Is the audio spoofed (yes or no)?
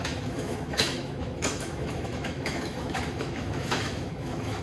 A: yes